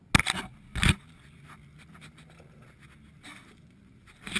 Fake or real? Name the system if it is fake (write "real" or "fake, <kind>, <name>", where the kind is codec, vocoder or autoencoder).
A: real